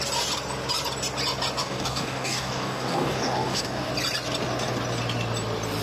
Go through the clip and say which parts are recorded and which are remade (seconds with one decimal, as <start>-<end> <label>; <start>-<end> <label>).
0.0-1.6 recorded; 1.6-3.9 remade; 3.9-5.8 recorded